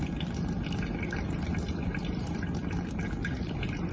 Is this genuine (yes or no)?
yes